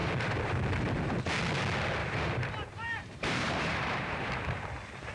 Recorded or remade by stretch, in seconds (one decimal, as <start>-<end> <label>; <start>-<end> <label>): 0.0-1.3 remade; 1.3-2.0 recorded; 2.0-4.3 remade; 4.3-5.1 recorded